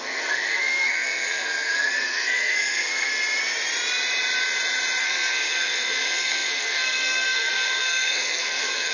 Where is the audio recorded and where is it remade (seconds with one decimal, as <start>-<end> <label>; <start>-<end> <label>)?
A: 0.0-3.1 remade; 3.1-5.0 recorded; 5.0-8.9 remade